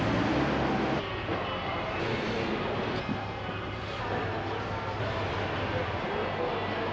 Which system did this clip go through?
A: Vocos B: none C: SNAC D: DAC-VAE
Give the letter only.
B